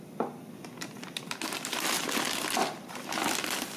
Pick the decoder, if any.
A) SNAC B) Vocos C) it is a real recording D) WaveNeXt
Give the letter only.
C